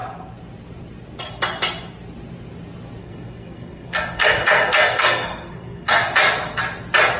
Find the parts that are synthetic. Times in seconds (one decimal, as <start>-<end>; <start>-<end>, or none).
3.0-6.1